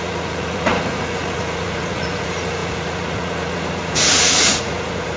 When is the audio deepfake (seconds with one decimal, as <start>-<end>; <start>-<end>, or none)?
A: 0.0-5.2